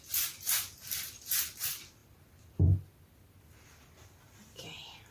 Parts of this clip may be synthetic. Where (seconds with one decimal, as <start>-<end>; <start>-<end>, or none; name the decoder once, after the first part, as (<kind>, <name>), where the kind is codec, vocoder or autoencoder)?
none